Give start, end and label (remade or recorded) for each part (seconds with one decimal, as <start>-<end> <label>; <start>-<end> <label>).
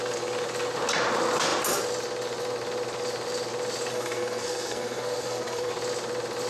0.0-3.9 recorded; 3.9-5.7 remade; 5.7-6.5 recorded